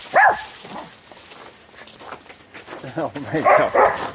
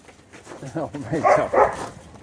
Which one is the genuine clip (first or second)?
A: first